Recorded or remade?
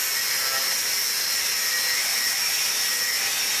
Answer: recorded